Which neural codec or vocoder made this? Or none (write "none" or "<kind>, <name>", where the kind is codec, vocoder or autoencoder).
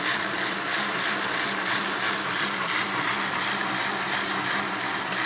vocoder, BigVGAN v2